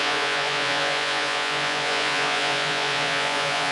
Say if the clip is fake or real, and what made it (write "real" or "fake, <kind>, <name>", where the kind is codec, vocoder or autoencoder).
fake, vocoder, Vocos